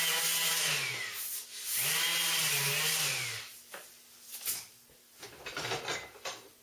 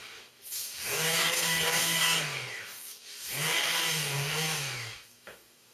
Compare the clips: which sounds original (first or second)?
first